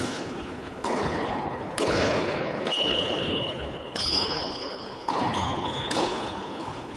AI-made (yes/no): yes